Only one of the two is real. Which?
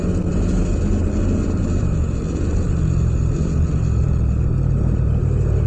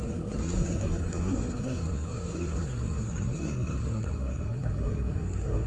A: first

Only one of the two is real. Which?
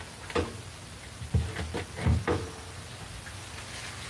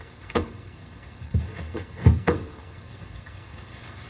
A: first